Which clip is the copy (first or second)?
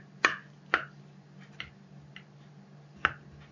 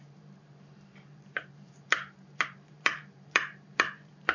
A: second